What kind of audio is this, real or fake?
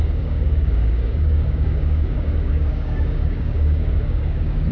fake